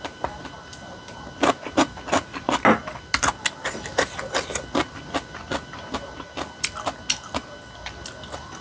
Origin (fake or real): real